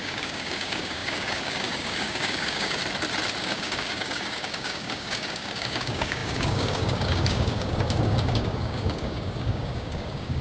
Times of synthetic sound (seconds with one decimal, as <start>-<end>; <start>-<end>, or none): 0.0-2.8; 3.4-10.4